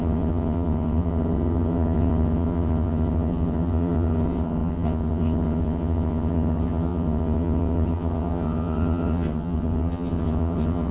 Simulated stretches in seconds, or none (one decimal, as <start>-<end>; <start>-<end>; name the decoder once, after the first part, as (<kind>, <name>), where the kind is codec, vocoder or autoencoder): 0.0-10.9 (vocoder, HiFi-GAN)